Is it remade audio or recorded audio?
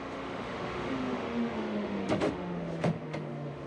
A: remade